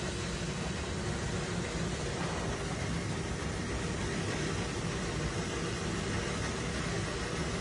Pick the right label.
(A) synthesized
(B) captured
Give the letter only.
B